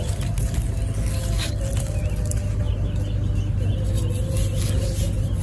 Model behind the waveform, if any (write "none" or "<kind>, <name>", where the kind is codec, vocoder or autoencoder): none